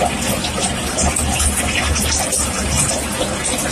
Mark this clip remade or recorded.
recorded